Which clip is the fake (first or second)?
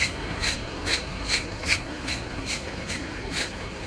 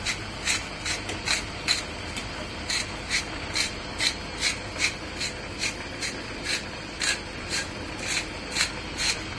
first